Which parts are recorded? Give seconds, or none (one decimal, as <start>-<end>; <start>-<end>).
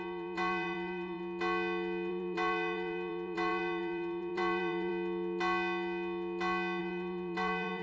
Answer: 1.2-2.1; 4.9-6.8